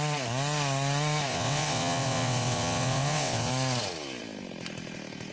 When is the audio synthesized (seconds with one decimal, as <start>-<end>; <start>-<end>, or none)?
1.3-3.5